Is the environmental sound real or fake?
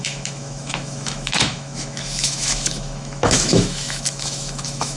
fake